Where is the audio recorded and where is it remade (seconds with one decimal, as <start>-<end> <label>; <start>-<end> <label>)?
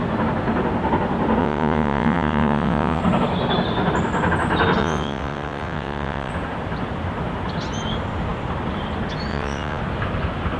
0.0-1.4 recorded; 1.4-3.0 remade; 3.0-4.8 recorded; 4.8-6.3 remade; 6.3-9.3 recorded; 9.3-9.8 remade; 9.8-10.6 recorded